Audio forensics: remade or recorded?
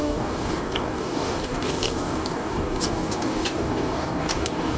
remade